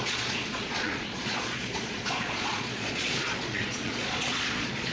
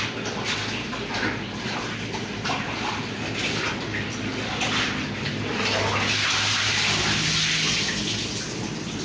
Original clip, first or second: second